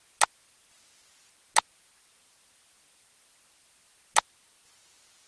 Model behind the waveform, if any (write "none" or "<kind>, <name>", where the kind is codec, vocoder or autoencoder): none